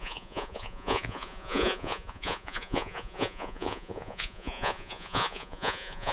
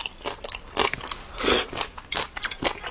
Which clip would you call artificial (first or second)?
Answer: first